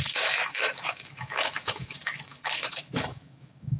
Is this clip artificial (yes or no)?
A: yes